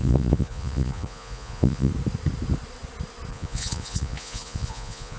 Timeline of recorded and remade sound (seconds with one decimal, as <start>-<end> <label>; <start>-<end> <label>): 0.0-1.9 remade; 1.9-3.3 recorded; 3.3-5.2 remade